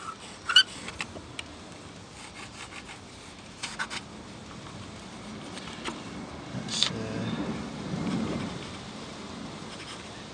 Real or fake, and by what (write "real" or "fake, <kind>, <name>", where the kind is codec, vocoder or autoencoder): real